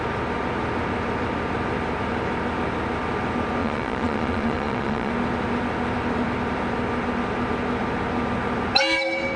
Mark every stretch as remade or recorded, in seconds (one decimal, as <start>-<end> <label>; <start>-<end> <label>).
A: 0.0-3.6 recorded; 3.6-5.1 remade; 5.1-9.4 recorded